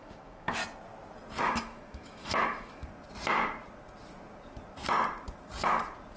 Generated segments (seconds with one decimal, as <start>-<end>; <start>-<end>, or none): 0.0-0.6; 1.4-2.9